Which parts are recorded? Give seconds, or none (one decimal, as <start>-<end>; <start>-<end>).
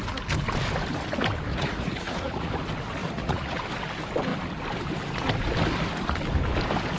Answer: 0.0-1.5; 2.5-3.0; 3.6-7.0